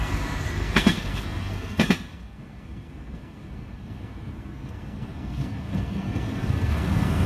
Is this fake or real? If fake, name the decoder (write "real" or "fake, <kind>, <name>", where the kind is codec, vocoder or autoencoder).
fake, codec, SNAC